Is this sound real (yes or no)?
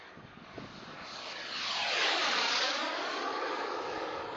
no